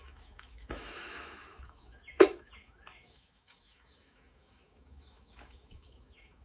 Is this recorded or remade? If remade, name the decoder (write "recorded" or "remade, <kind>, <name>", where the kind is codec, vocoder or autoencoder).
remade, autoencoder, DAC-VAE